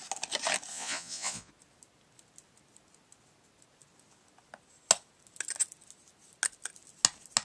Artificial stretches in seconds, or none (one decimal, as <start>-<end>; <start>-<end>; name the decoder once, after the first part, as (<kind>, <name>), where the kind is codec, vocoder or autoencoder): 0.7-1.5 (vocoder, Vocos)